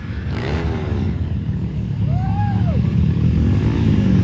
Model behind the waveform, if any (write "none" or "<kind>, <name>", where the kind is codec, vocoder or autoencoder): codec, DAC